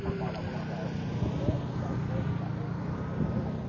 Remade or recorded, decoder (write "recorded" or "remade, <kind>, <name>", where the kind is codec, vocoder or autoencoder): recorded